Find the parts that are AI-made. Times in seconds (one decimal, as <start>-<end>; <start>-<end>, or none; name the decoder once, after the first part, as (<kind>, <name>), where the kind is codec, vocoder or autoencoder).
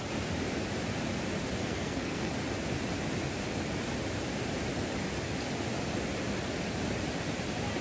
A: 1.6-2.3 (codec, SNAC)